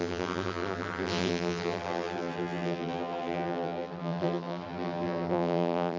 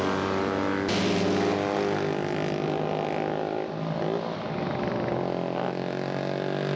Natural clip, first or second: second